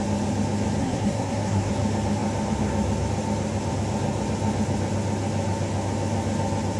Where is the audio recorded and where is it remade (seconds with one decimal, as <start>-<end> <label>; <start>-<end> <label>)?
0.0-0.8 recorded; 0.8-1.7 remade; 1.7-6.8 recorded